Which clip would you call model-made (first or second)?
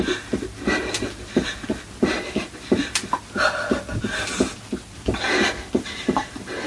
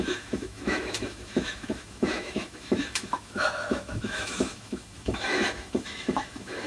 second